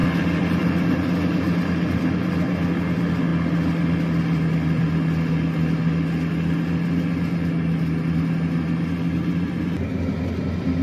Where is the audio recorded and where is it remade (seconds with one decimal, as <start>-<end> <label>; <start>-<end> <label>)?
0.0-10.8 recorded